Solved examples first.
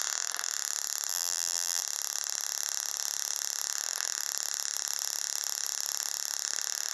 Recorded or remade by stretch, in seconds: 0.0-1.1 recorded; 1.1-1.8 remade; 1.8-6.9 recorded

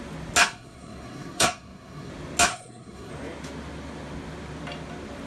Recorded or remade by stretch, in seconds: 0.0-0.4 recorded; 0.4-2.1 remade; 2.1-2.5 recorded; 2.5-3.1 remade; 3.1-5.3 recorded

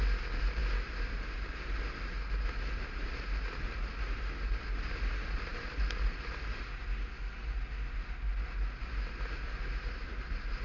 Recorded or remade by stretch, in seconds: 0.0-10.6 recorded

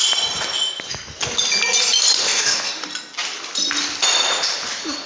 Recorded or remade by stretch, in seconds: 0.0-2.2 recorded; 2.2-2.8 remade; 2.8-5.1 recorded

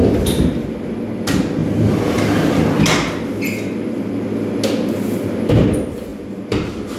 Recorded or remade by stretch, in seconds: 0.0-7.0 recorded

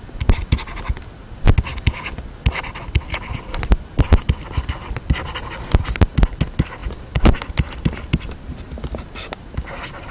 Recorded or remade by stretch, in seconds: 0.0-10.1 recorded

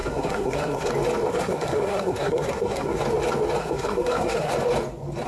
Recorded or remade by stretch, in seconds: 0.0-0.9 remade; 0.9-1.3 recorded; 1.3-3.0 remade; 3.0-3.6 recorded; 3.6-4.5 remade; 4.5-5.3 recorded